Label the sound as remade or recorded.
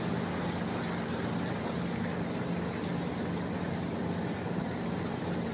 recorded